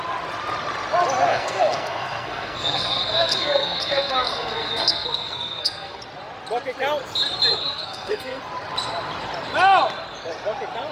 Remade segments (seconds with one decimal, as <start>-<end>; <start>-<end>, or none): 1.3-6.0; 7.6-8.4